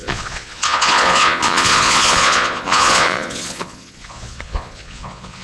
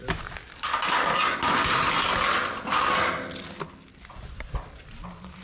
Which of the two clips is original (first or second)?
second